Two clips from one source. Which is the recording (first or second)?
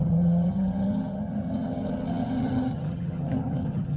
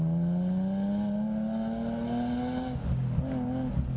second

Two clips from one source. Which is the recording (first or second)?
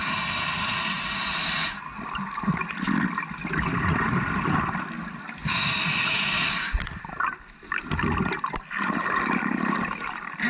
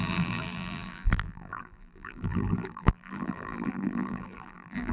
first